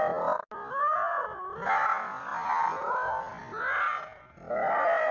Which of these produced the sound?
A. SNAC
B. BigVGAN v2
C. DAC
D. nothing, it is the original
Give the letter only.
D